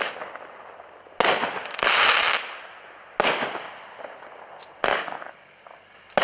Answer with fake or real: real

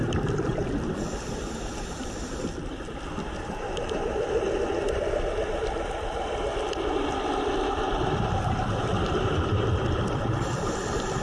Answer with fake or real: fake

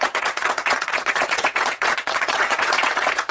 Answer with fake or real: fake